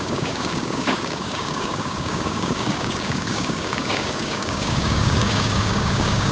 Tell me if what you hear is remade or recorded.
remade